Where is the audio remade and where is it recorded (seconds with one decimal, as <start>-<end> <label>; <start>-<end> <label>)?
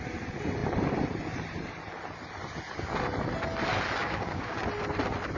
0.0-4.0 recorded; 4.0-4.6 remade; 4.6-5.4 recorded